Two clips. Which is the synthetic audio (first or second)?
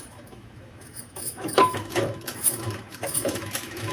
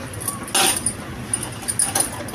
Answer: first